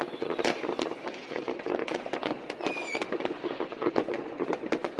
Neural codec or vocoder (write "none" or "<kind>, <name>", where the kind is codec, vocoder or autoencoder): vocoder, Vocos